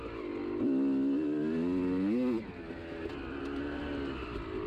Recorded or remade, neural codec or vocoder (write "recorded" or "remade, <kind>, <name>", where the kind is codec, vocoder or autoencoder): recorded